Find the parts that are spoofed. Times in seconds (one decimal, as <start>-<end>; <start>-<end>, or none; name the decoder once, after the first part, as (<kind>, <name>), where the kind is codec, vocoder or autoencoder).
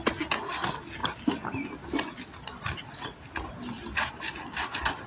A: none